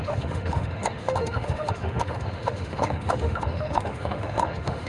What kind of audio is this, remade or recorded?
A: remade